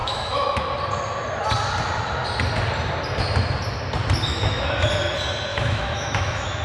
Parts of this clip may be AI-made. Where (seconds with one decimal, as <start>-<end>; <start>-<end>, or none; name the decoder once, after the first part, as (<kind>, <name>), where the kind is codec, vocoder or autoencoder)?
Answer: 0.0-0.6 (autoencoder, DAC-VAE); 4.3-4.9; 5.5-6.6